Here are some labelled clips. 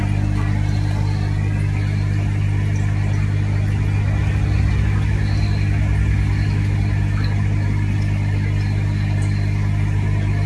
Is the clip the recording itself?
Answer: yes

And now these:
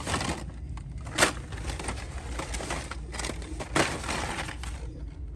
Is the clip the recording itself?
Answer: yes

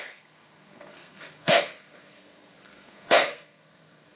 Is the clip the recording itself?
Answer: no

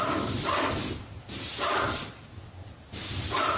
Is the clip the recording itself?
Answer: yes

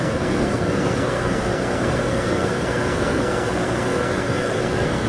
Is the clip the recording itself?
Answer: no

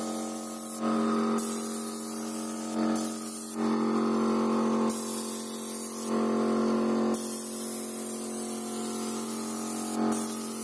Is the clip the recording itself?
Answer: yes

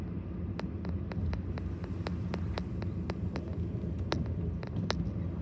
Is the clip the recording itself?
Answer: yes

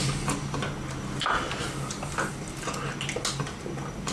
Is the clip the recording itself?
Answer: yes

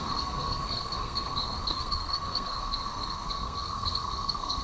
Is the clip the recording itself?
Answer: no